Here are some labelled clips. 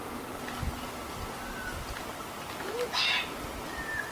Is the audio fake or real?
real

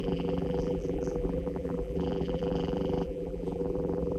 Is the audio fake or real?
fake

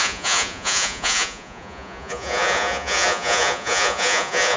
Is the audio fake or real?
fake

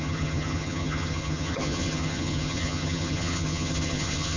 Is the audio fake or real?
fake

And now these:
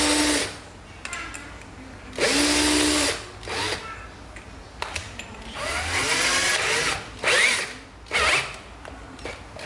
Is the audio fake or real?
real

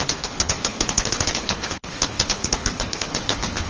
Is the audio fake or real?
fake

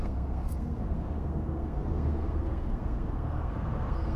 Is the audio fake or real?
fake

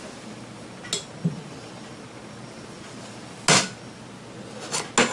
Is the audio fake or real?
real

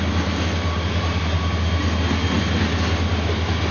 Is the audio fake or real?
real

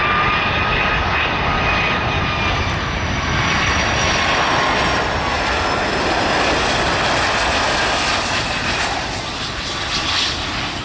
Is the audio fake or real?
real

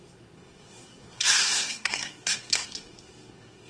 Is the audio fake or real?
fake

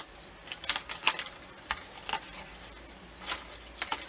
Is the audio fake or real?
real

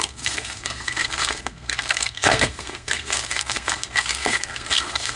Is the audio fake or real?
fake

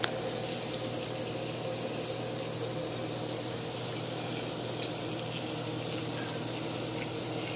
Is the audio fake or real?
real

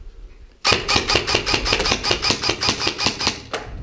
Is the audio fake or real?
real